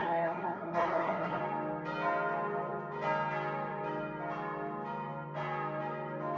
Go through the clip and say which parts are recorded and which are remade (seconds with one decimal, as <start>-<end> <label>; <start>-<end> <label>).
0.0-1.4 remade; 1.4-6.4 recorded

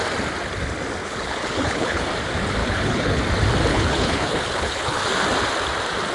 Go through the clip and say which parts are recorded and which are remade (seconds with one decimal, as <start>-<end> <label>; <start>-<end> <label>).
0.0-1.0 recorded; 1.0-2.0 remade; 2.0-2.6 recorded; 2.6-3.2 remade; 3.2-3.7 recorded; 3.7-5.0 remade; 5.0-6.1 recorded

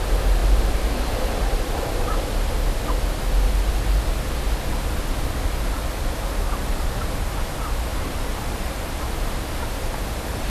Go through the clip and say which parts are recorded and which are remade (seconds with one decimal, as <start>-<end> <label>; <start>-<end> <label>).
0.0-7.9 recorded; 7.9-9.0 remade; 9.0-10.5 recorded

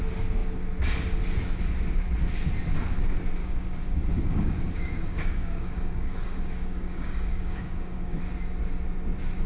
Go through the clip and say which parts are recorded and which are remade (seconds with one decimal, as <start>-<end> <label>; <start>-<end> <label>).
0.0-3.4 recorded; 3.4-8.2 remade; 8.2-9.5 recorded

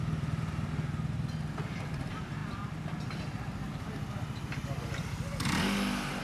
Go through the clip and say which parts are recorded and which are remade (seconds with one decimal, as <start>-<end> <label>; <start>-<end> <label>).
0.0-6.2 recorded

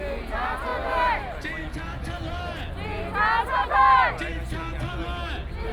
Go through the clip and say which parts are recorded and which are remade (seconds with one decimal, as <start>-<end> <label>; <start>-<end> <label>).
0.0-5.7 recorded